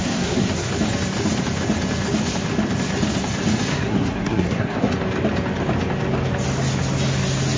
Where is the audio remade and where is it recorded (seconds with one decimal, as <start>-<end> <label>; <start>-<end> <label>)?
0.0-0.7 remade; 0.7-3.7 recorded; 3.7-4.9 remade; 4.9-7.6 recorded